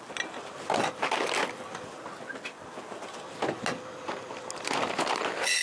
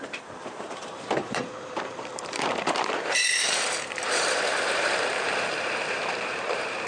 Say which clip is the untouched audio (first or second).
first